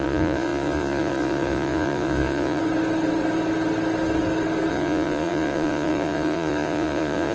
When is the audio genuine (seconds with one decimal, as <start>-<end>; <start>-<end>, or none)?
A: 2.6-4.7